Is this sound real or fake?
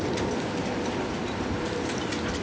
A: real